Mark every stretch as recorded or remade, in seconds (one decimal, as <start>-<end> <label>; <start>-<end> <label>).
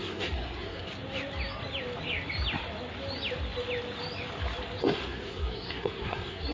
0.0-0.9 remade; 0.9-4.8 recorded; 4.8-6.5 remade